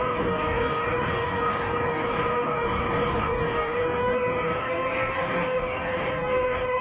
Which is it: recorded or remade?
remade